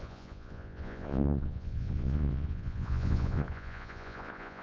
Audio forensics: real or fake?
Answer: fake